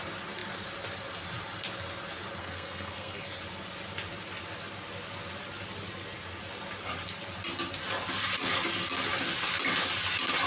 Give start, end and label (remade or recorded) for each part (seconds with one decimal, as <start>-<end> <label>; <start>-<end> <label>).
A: 0.0-2.4 recorded; 2.4-3.2 remade; 3.2-10.5 recorded